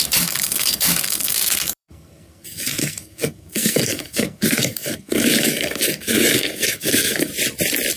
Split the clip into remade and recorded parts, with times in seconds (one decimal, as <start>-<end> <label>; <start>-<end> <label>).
0.0-7.3 remade; 7.3-8.0 recorded